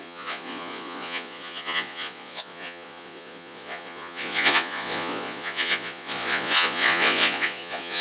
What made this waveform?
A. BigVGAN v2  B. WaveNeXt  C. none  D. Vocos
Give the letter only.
D